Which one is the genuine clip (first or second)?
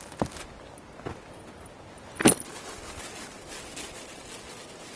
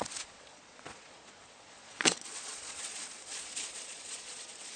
first